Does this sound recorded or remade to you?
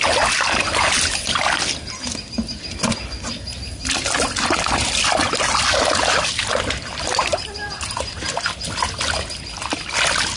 recorded